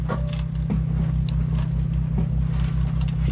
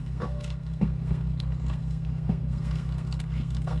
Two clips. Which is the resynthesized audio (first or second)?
second